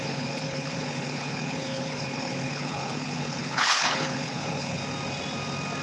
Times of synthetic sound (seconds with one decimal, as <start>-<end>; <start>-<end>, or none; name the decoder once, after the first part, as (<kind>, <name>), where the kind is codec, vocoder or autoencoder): 0.0-4.8 (codec, HILCodec)